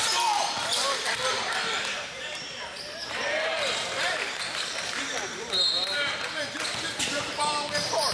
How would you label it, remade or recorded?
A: remade